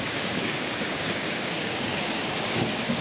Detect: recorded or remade remade